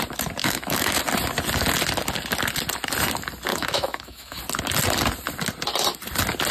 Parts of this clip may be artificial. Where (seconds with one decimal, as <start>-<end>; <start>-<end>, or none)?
0.4-1.0; 3.5-4.4